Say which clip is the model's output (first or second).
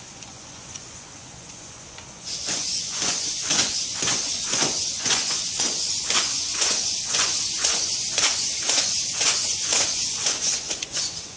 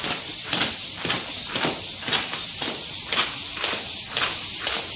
first